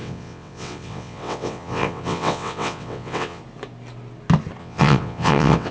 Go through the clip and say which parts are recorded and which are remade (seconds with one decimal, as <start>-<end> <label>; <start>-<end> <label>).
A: 0.0-3.4 remade; 3.4-4.6 recorded; 4.6-5.7 remade